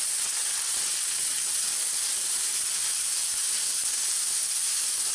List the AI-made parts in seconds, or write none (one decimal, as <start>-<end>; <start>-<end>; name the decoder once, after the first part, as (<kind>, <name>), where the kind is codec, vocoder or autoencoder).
0.0-1.7 (vocoder, WaveNeXt)